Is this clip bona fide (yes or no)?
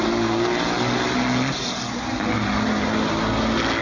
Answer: yes